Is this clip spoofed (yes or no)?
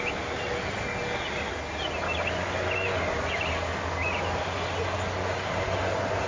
no